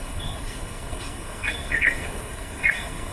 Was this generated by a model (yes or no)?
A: yes